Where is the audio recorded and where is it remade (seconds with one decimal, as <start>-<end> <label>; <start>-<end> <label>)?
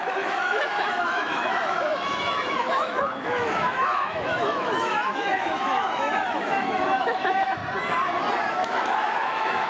0.0-7.6 remade; 7.6-8.5 recorded; 8.5-9.7 remade